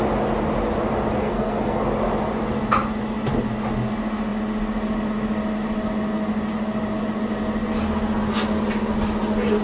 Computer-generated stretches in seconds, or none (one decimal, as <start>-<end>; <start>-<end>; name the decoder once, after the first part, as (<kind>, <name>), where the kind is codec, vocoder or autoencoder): 1.2-1.8 (codec, SNAC)